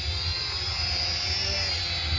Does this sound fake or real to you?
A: real